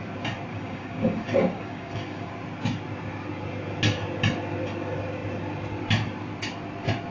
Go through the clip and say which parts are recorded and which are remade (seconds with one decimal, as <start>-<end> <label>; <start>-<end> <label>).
0.0-0.5 recorded; 0.5-2.3 remade; 2.3-7.1 recorded